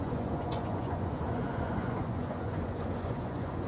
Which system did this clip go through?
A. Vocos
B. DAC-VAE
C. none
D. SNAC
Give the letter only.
A